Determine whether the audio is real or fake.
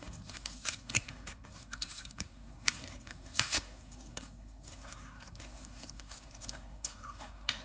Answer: fake